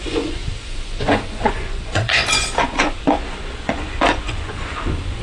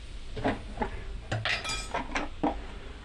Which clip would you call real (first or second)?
second